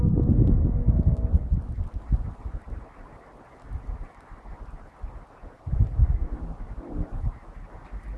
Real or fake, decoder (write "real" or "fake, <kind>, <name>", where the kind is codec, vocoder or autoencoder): real